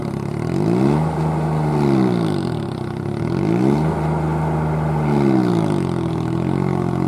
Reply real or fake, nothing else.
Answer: real